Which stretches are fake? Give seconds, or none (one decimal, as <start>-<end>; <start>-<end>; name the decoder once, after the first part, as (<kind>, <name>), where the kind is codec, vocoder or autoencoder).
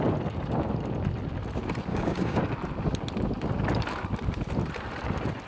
1.9-2.4 (codec, DAC)